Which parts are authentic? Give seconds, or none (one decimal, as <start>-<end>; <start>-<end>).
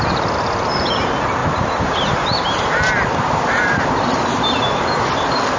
0.0-1.4; 4.8-5.6